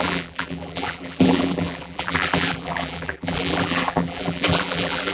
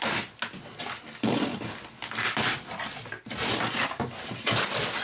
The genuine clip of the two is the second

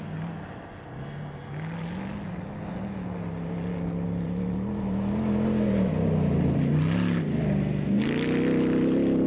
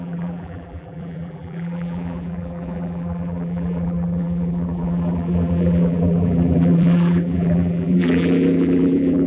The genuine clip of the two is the first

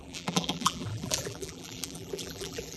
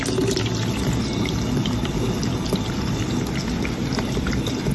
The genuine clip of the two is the second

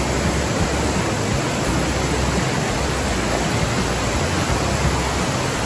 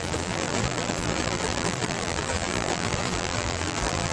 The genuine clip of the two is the first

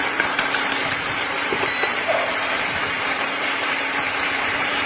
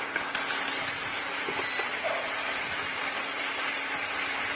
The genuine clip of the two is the second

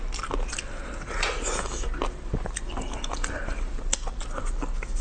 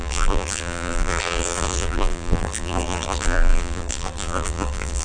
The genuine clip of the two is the first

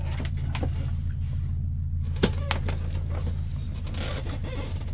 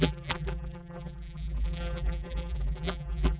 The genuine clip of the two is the first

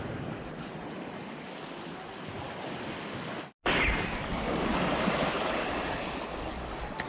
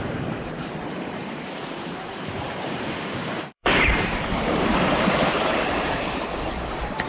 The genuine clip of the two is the first